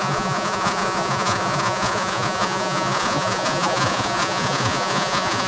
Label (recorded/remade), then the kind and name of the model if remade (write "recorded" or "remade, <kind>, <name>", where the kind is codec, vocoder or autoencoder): remade, vocoder, Vocos